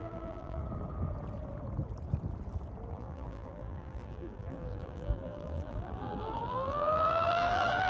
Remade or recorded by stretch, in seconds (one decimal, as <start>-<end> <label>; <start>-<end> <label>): 0.0-0.6 remade; 0.6-2.9 recorded; 2.9-7.9 remade